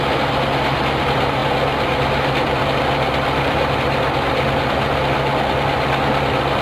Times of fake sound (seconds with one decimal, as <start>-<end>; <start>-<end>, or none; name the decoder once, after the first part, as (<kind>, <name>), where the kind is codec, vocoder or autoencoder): none